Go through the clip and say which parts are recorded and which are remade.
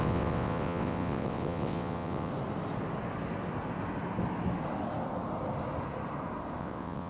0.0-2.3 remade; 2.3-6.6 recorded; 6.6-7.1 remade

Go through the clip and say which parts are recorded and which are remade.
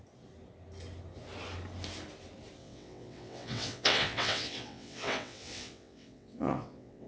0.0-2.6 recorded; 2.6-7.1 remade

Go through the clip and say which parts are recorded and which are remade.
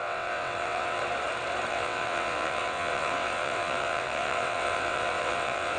0.0-1.0 remade; 1.0-1.7 recorded; 1.7-5.8 remade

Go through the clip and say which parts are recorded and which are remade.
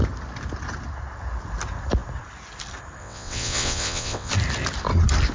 0.0-3.0 recorded; 3.0-4.3 remade; 4.3-5.3 recorded